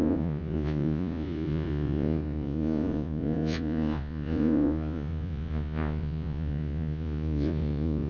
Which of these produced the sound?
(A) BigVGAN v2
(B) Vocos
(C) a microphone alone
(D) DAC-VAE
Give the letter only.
B